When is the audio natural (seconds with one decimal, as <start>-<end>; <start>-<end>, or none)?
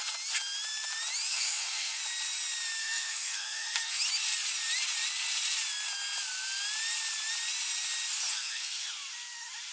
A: 0.0-1.3; 2.0-2.8; 4.0-8.3; 8.9-9.7